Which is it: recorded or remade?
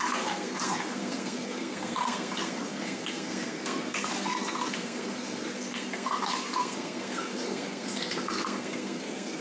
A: remade